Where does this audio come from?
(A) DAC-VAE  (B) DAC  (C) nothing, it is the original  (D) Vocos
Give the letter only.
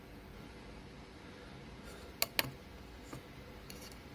C